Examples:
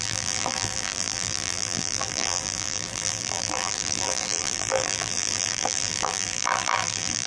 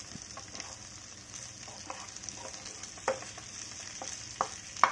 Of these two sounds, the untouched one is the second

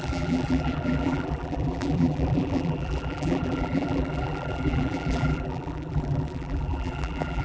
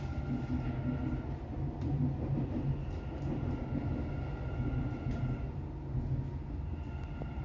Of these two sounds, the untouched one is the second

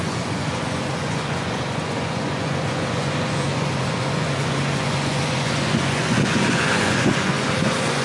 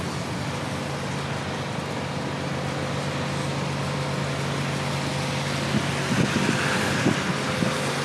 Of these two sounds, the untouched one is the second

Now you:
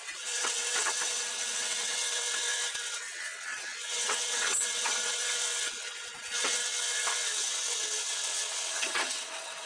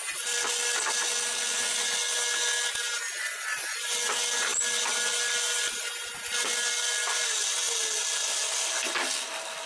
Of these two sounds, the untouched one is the second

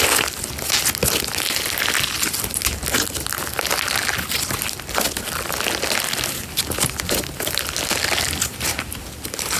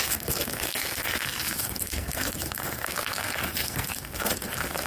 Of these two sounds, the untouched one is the first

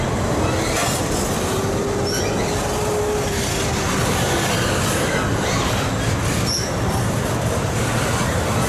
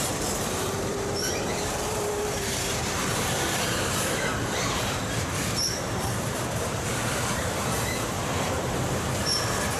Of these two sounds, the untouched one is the first